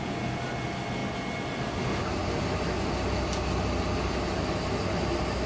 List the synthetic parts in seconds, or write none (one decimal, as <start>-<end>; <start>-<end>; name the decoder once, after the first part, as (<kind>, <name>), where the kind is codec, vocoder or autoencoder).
none